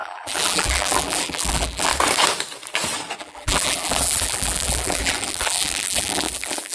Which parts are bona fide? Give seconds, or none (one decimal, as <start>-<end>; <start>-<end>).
1.9-3.2